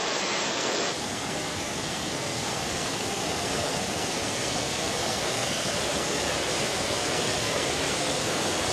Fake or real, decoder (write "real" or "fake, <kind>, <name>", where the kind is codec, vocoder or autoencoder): fake, codec, SNAC